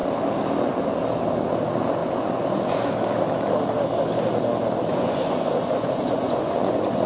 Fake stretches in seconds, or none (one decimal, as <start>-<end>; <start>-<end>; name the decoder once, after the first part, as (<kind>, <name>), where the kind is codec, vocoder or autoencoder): 2.0-2.9 (vocoder, Vocos); 4.9-7.1